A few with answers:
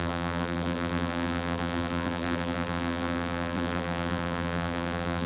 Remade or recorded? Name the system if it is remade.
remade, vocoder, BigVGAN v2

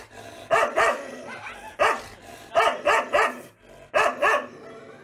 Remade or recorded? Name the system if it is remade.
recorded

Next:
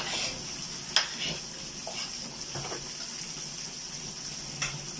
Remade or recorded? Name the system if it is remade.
recorded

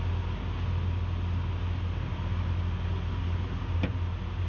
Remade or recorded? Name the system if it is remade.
recorded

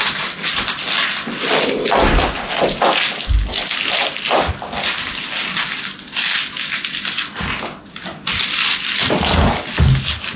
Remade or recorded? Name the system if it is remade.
recorded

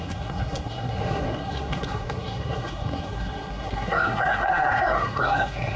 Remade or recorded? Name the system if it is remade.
remade, codec, SNAC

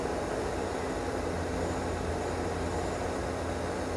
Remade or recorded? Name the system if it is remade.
recorded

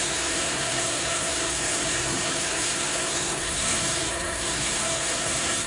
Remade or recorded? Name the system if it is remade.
remade, codec, SNAC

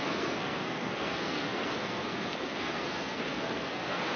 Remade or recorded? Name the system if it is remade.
remade, codec, SNAC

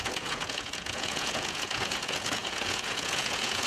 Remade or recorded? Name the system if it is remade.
remade, vocoder, Vocos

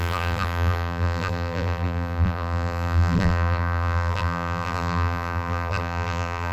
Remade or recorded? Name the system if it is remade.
remade, vocoder, BigVGAN v2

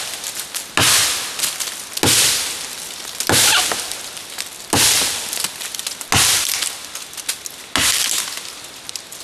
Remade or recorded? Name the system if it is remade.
recorded